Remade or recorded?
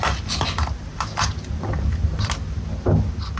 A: remade